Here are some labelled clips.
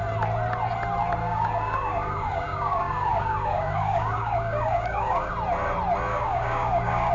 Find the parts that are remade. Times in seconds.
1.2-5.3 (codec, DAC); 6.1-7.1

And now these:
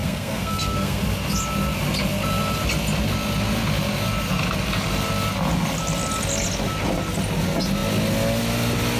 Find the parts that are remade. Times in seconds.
0.0-1.0 (codec, SNAC)

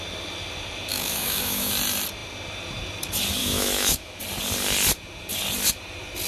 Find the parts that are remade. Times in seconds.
0.9-1.7 (autoencoder, DAC-VAE); 3.4-4.2

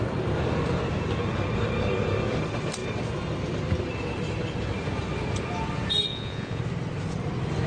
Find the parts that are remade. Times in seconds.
6.1-6.6 (vocoder, Vocos)

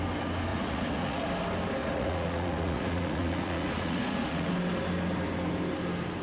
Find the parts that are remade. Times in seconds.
0.5-1.3 (vocoder, Vocos); 1.8-4.5

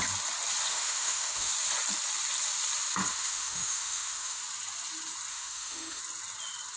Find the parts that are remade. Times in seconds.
0.7-1.5 (autoencoder, DAC-VAE); 3.1-4.4; 5.3-6.0

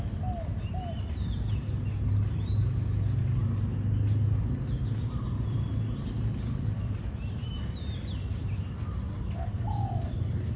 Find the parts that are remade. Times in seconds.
none

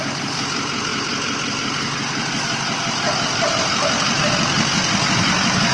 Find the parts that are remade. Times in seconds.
none